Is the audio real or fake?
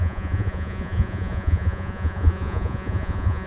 fake